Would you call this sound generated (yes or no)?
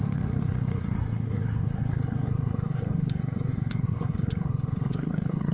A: yes